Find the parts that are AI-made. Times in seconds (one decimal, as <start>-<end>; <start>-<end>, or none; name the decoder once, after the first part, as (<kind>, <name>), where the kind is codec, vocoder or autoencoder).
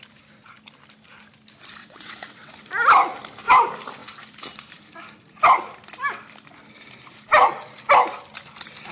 1.8-2.5 (vocoder, WaveNeXt)